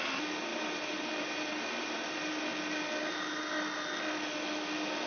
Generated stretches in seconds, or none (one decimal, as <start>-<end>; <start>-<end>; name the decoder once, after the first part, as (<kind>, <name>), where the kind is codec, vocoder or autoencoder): 0.5-2.5 (vocoder, BigVGAN v2)